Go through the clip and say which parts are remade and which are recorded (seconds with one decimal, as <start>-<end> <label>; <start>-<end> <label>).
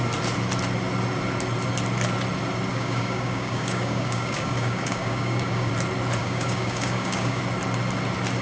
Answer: 0.0-2.7 recorded; 2.7-5.7 remade; 5.7-6.2 recorded; 6.2-7.4 remade; 7.4-8.4 recorded